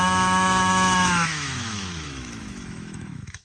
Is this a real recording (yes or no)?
no